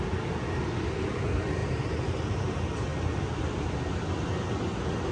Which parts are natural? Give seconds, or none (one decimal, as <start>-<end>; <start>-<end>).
0.0-1.6; 2.2-5.1